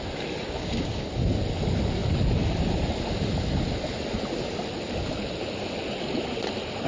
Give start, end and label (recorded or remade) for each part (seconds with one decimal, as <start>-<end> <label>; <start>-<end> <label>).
0.0-0.4 recorded; 0.4-1.1 remade; 1.1-6.9 recorded